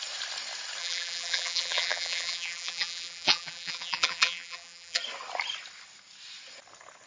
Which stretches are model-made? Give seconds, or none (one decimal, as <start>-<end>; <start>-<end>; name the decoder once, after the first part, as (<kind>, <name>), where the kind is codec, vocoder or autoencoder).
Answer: 0.8-5.0 (vocoder, BigVGAN v2)

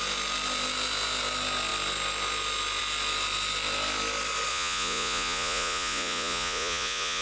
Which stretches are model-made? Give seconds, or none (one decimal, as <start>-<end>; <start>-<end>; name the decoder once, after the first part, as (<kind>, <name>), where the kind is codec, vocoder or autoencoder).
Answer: 4.5-7.2 (vocoder, Vocos)

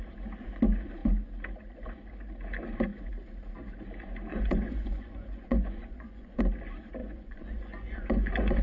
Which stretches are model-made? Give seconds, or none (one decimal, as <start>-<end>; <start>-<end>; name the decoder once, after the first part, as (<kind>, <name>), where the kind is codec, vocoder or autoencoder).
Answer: 4.3-6.4 (vocoder, Vocos); 7.0-8.6

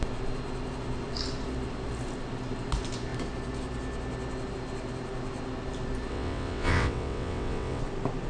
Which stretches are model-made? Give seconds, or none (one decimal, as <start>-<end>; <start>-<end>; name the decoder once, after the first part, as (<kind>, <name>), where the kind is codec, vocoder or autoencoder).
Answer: 6.1-7.8 (vocoder, WaveNeXt)

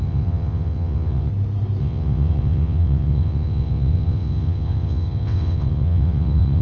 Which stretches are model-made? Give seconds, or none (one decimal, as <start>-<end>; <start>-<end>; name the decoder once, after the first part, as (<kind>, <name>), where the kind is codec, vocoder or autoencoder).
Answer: 0.0-1.3 (vocoder, WaveNeXt); 1.8-6.6

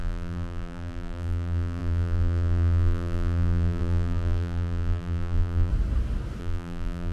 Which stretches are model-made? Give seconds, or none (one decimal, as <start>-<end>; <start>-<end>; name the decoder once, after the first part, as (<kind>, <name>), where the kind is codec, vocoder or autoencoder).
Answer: 0.0-5.7 (vocoder, BigVGAN v2); 6.4-7.1

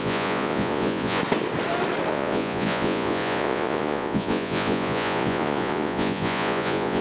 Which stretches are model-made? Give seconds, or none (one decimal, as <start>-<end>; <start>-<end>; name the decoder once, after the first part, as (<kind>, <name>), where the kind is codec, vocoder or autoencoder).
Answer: 0.0-1.2 (vocoder, Vocos); 2.1-7.0

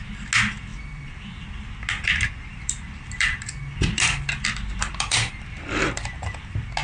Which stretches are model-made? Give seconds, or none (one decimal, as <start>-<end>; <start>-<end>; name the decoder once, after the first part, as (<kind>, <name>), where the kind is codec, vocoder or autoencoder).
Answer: 0.7-1.5 (vocoder, BigVGAN v2); 2.5-6.2